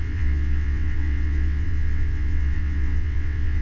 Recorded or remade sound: remade